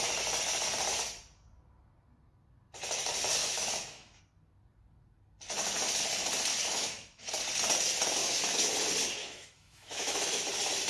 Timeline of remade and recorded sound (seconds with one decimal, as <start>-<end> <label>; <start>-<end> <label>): 0.0-3.4 recorded; 3.4-4.2 remade; 4.2-6.5 recorded; 6.5-7.3 remade; 7.3-8.2 recorded; 8.2-8.7 remade; 8.7-9.2 recorded; 9.2-10.4 remade; 10.4-10.9 recorded

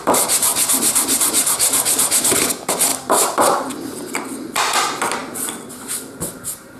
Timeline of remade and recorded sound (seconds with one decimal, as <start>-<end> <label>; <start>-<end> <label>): 0.0-2.9 recorded; 2.9-3.7 remade; 3.7-6.8 recorded